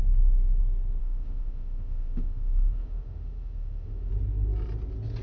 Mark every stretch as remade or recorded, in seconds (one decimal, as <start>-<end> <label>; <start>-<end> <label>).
0.0-1.0 recorded; 1.0-4.1 remade; 4.1-5.2 recorded